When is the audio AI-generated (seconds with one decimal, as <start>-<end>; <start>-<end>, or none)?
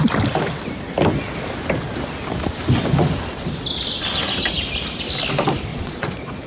5.7-6.5